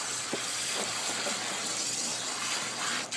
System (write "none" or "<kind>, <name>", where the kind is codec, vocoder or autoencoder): none